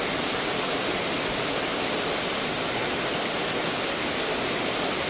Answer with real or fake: real